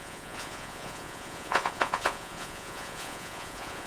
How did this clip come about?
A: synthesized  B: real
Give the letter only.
A